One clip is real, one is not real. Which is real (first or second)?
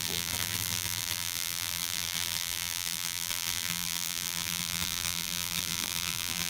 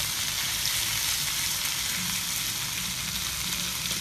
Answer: second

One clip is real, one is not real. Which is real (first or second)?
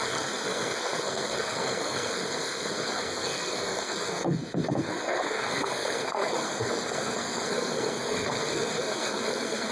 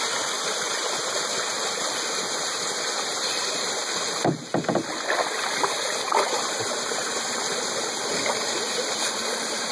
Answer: second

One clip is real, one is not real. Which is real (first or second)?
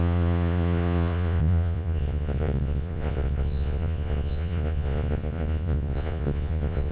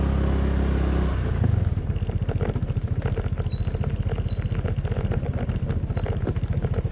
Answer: second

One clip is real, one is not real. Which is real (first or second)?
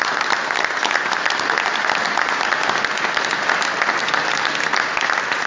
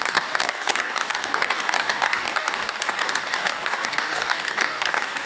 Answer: first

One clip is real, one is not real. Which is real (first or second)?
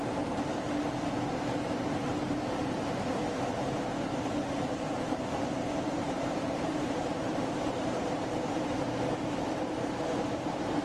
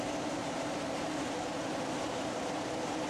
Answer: second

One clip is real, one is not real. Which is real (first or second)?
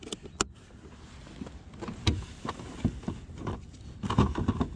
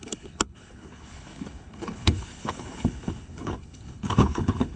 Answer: first